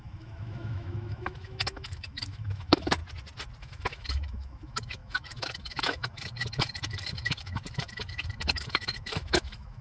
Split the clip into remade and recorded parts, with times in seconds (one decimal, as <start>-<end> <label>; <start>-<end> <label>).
0.0-3.0 remade; 3.0-3.6 recorded; 3.6-9.8 remade